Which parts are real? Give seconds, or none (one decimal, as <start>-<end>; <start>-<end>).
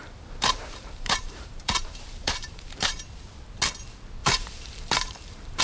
3.0-4.2